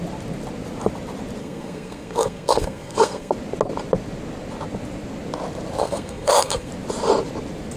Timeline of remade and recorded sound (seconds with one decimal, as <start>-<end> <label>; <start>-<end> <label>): 0.0-1.4 recorded; 1.4-3.3 remade; 3.3-5.8 recorded; 5.8-6.7 remade; 6.7-7.8 recorded